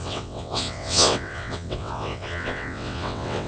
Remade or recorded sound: remade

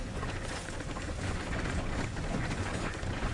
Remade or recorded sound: remade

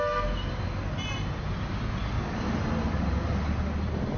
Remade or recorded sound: recorded